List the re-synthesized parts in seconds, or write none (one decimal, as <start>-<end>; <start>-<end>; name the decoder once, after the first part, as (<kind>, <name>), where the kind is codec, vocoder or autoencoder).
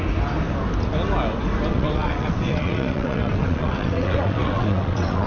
1.7-5.3 (vocoder, WaveNeXt)